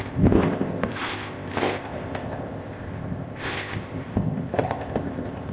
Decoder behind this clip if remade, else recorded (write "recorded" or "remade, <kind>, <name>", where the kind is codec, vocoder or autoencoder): remade, codec, ZipCodec